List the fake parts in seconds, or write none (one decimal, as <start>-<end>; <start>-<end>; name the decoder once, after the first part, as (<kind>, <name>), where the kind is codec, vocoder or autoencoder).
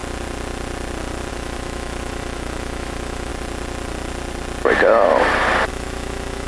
1.3-3.3 (autoencoder, DAC-VAE); 5.7-6.5